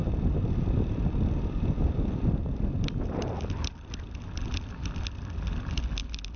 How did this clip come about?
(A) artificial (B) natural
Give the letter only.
B